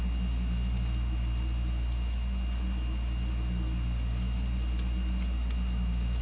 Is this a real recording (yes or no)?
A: yes